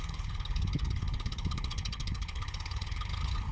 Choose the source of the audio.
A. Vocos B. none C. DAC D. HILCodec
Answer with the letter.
D